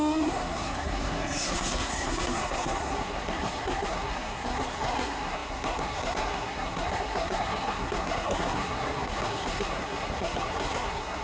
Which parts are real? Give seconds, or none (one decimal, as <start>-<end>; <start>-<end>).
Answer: none